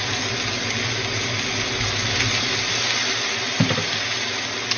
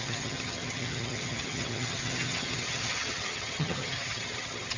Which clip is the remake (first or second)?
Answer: second